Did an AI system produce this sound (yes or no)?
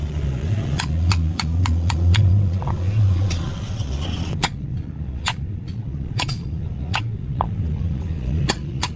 yes